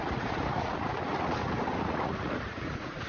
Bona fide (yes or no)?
no